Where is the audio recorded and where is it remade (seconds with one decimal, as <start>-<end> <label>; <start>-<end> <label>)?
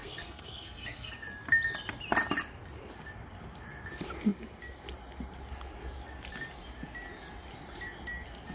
0.0-1.1 remade; 1.1-8.5 recorded